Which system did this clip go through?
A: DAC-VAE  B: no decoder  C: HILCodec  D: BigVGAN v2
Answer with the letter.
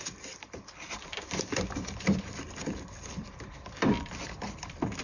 D